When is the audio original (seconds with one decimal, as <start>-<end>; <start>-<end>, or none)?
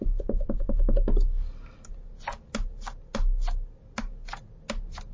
0.0-5.1